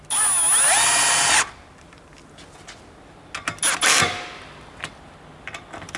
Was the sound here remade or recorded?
recorded